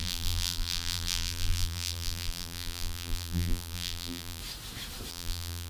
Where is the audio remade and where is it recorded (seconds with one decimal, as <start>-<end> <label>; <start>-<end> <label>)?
0.0-4.4 remade; 4.4-5.1 recorded; 5.1-5.7 remade